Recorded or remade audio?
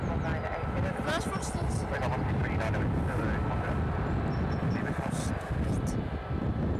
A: recorded